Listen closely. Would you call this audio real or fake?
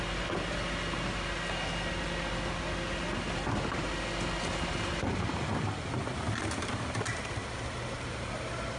real